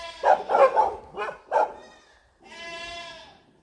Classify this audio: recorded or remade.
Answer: recorded